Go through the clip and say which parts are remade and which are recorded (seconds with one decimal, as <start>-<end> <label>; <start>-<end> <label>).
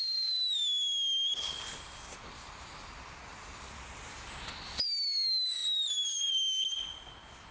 0.0-7.5 recorded